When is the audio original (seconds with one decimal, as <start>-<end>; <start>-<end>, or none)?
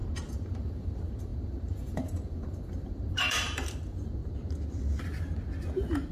4.2-6.1